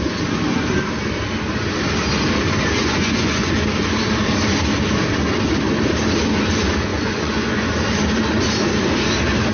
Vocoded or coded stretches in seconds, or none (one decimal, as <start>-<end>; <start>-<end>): 2.8-3.5; 6.9-7.7